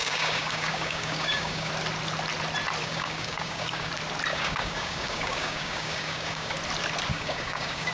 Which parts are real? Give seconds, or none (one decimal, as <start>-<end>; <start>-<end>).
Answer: 1.7-2.8; 3.9-4.3; 6.5-7.1